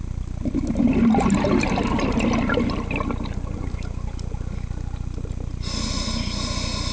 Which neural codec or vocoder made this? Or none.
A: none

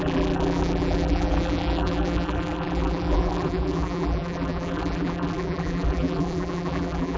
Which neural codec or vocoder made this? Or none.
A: vocoder, BigVGAN v2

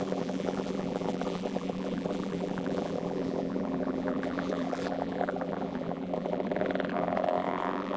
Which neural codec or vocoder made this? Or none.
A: vocoder, BigVGAN v2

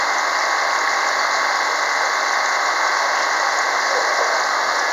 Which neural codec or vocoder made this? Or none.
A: none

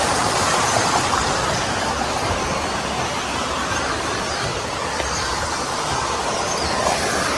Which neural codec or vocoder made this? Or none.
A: none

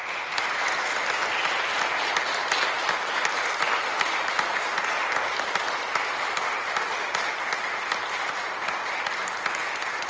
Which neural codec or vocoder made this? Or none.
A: none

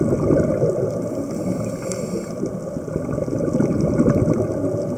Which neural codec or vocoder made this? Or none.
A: none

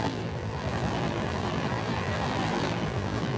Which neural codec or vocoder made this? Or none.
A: vocoder, BigVGAN v2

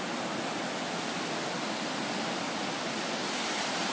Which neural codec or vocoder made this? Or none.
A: none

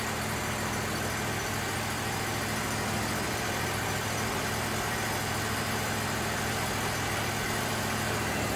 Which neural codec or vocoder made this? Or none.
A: none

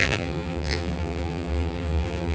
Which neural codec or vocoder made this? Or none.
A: vocoder, BigVGAN v2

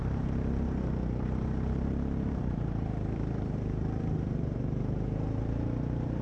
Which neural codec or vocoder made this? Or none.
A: vocoder, BigVGAN v2